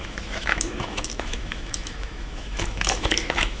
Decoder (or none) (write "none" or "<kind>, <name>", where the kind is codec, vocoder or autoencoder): autoencoder, DAC-VAE